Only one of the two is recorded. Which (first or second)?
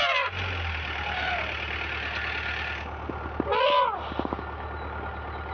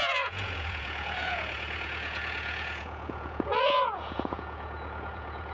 first